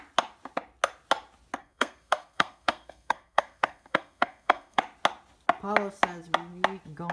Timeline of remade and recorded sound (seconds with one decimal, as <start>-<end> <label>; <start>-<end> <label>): 0.0-1.6 recorded; 1.6-4.8 remade; 4.8-7.1 recorded